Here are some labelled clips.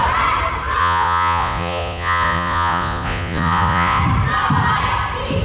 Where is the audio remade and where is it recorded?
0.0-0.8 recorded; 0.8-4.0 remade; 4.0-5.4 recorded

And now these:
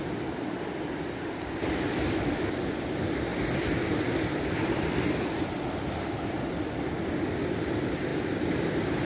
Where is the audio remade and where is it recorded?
0.0-9.0 recorded

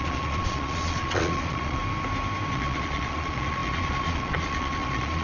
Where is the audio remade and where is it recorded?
0.0-1.8 remade; 1.8-2.5 recorded; 2.5-5.2 remade

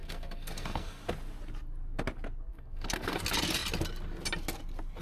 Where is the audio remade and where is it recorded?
0.0-1.0 remade; 1.0-2.5 recorded; 2.5-3.2 remade; 3.2-5.0 recorded

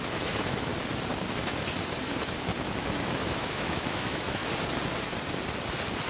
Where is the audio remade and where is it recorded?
0.0-0.7 remade; 0.7-2.7 recorded; 2.7-4.4 remade; 4.4-6.1 recorded